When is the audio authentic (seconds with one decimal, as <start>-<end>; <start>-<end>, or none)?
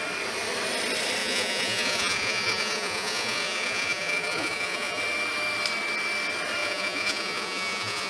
0.0-1.2; 5.0-6.6